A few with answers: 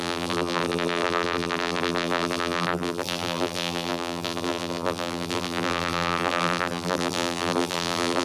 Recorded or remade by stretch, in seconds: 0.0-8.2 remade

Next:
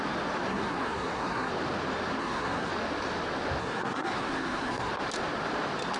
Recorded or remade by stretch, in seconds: 0.0-0.5 recorded; 0.5-1.5 remade; 1.5-2.2 recorded; 2.2-2.7 remade; 2.7-3.6 recorded; 3.6-4.9 remade; 4.9-6.0 recorded

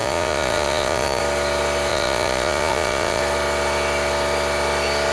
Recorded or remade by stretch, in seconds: 0.0-1.2 remade; 1.2-1.9 recorded; 1.9-3.2 remade; 3.2-5.1 recorded

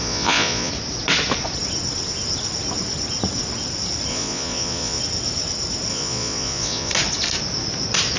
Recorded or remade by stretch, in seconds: 0.0-0.7 remade; 0.7-4.1 recorded; 4.1-5.0 remade; 5.0-5.9 recorded; 5.9-6.9 remade; 6.9-8.2 recorded

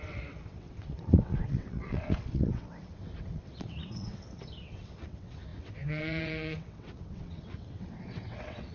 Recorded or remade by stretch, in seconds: 0.0-8.7 remade

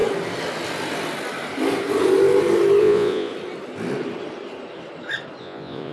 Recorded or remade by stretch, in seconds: 0.0-2.8 recorded; 2.8-3.3 remade; 3.3-5.4 recorded; 5.4-5.9 remade